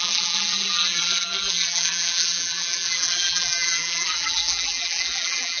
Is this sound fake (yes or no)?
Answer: yes